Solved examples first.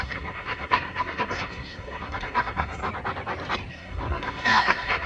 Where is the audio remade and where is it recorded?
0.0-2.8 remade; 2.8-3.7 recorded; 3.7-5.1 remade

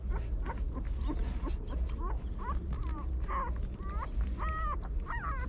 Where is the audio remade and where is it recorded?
0.0-5.5 recorded

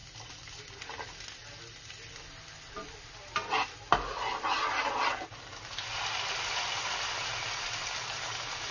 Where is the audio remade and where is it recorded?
0.0-8.7 recorded

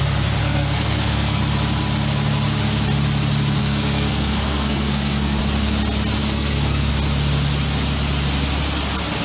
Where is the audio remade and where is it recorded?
0.0-0.4 recorded; 0.4-1.4 remade; 1.4-3.6 recorded; 3.6-5.4 remade; 5.4-6.2 recorded; 6.2-6.9 remade; 6.9-9.2 recorded

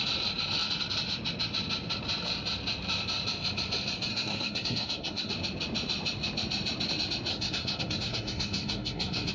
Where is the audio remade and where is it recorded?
0.0-4.1 recorded; 4.1-5.3 remade; 5.3-7.3 recorded; 7.3-9.3 remade